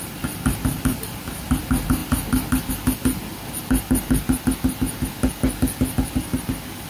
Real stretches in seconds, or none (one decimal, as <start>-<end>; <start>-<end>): 0.0-6.9